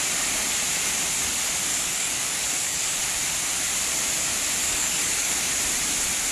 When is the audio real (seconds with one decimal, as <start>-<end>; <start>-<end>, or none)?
0.0-1.7; 3.0-4.6; 5.5-6.3